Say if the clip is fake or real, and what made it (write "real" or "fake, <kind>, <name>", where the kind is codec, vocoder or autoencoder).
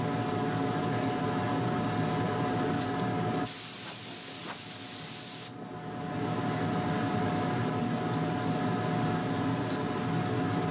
real